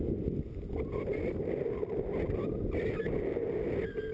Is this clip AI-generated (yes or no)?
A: no